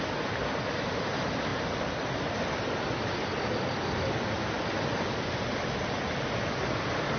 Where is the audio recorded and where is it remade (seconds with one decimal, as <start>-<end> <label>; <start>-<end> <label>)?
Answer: 0.0-7.2 recorded